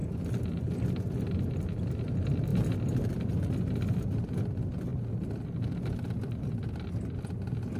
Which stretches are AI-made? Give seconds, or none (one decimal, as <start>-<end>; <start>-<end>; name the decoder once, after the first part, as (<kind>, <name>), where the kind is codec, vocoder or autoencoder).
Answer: none